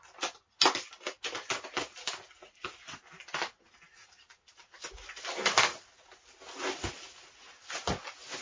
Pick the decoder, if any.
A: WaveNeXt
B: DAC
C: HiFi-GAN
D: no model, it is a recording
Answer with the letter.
D